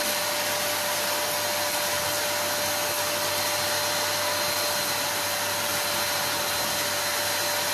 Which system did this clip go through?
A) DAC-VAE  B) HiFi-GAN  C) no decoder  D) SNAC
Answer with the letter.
C